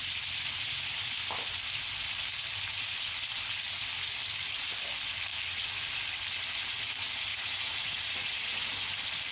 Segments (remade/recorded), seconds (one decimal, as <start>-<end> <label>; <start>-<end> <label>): 0.0-7.3 recorded; 7.3-8.7 remade; 8.7-9.3 recorded